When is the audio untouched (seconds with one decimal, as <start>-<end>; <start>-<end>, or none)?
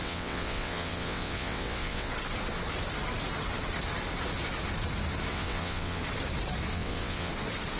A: 2.1-5.3; 6.0-6.7; 7.3-7.8